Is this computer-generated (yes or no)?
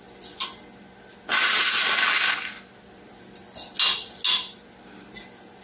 no